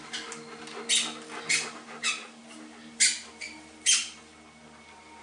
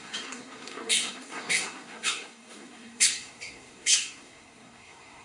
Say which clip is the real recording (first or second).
first